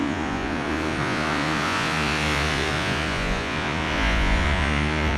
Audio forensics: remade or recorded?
remade